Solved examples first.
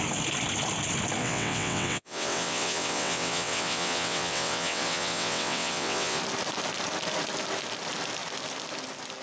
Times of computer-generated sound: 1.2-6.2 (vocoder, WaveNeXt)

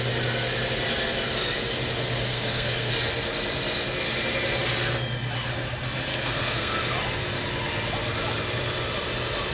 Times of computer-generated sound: 2.3-2.9 (codec, SNAC); 6.1-6.7

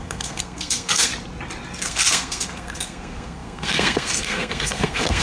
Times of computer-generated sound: 0.0-1.1 (codec, SNAC); 1.8-5.2

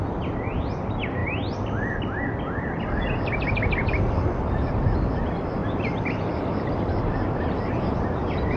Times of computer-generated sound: none

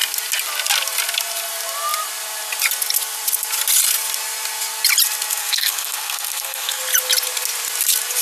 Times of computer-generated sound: 5.4-6.8 (codec, SNAC)

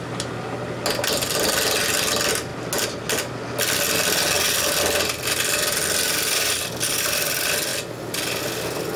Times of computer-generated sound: none